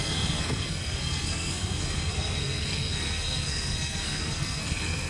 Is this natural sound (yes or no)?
no